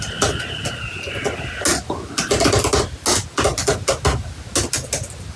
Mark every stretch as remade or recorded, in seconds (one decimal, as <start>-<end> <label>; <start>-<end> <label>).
0.0-5.4 recorded